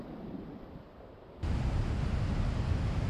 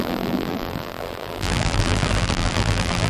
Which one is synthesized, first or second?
second